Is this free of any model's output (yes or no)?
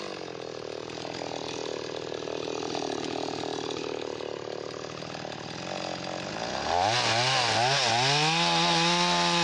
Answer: yes